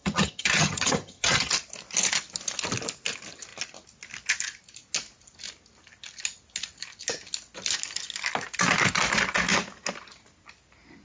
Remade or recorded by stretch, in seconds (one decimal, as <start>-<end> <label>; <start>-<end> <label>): 0.0-1.5 remade; 1.5-11.0 recorded